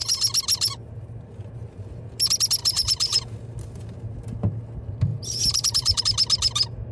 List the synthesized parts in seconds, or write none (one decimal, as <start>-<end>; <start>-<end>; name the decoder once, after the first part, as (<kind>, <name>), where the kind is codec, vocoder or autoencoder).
2.6-3.3 (vocoder, BigVGAN v2); 5.1-6.0